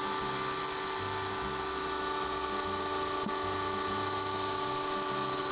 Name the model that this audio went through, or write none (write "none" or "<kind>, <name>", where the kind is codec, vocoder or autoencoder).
none